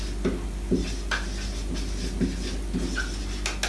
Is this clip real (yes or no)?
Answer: yes